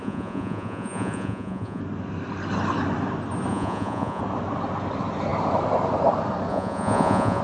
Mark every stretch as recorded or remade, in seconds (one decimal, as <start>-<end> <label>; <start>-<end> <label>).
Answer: 0.0-1.8 remade; 1.8-3.5 recorded; 3.5-4.2 remade; 4.2-6.5 recorded; 6.5-7.4 remade